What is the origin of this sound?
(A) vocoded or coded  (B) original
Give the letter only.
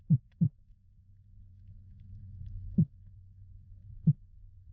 A